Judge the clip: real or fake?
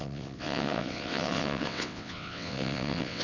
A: fake